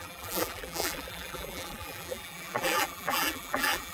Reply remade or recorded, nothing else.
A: remade